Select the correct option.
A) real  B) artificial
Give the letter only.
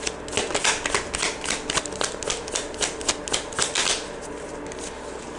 A